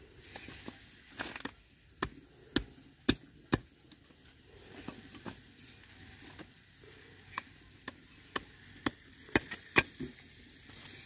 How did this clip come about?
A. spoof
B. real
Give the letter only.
B